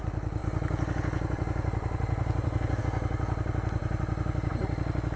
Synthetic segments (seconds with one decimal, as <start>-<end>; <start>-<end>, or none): 0.4-2.8